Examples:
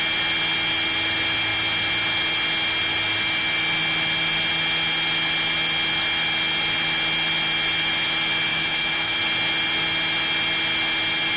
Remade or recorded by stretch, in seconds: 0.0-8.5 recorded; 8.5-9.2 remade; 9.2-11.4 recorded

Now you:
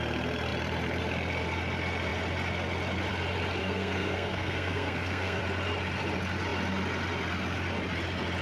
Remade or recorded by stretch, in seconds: 0.0-3.6 recorded; 3.6-5.4 remade; 5.4-8.4 recorded

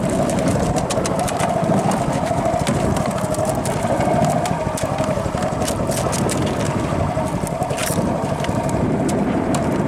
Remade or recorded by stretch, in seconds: 0.0-7.8 recorded; 7.8-9.9 remade

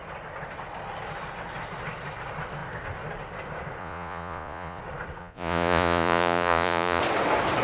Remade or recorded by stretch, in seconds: 0.0-3.8 recorded; 3.8-4.8 remade; 4.8-5.2 recorded; 5.2-7.0 remade; 7.0-7.6 recorded

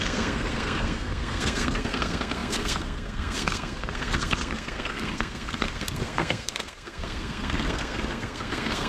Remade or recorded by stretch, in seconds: 0.0-8.9 remade